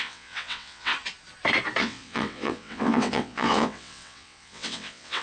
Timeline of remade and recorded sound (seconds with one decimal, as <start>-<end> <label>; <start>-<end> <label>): 0.0-0.9 remade; 0.9-1.8 recorded; 1.8-5.2 remade